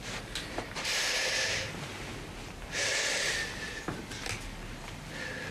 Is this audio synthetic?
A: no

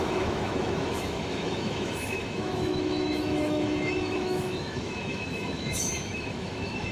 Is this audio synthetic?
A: yes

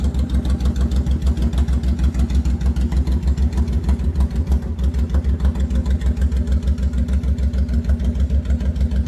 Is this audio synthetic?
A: no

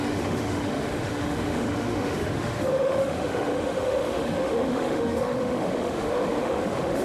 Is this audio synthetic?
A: yes